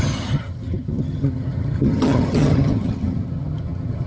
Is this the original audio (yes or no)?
no